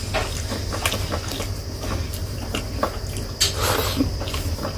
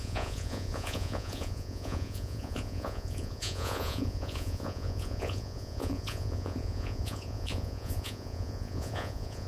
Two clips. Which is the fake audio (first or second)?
second